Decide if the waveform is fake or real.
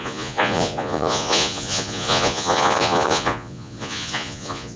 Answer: fake